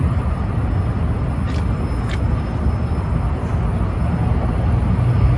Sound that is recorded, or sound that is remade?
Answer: recorded